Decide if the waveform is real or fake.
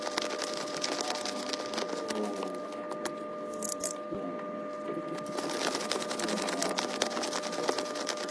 real